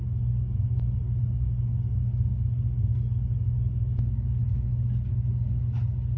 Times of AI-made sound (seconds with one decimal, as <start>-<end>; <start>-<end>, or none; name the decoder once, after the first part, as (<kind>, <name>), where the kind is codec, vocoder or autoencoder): none